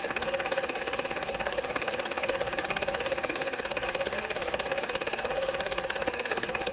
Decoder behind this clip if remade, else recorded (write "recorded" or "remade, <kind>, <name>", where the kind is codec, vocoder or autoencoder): remade, codec, SNAC